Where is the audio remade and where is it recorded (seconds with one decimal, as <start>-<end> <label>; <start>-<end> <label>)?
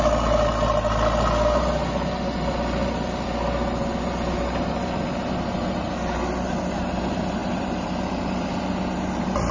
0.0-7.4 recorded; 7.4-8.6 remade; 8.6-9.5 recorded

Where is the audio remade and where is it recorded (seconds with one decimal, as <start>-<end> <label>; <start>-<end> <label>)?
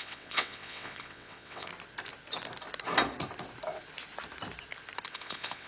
0.0-1.7 remade; 1.7-5.1 recorded; 5.1-5.7 remade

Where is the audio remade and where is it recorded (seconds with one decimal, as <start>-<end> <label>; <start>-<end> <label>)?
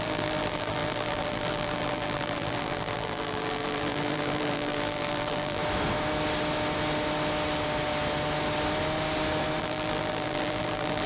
0.0-5.6 remade; 5.6-9.6 recorded; 9.6-11.1 remade